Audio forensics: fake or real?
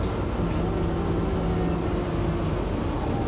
real